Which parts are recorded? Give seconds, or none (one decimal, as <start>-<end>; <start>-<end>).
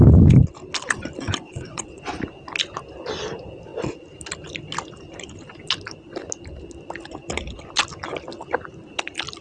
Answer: 0.0-1.4; 2.1-9.4